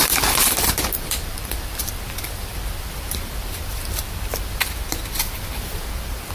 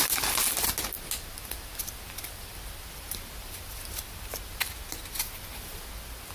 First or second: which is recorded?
second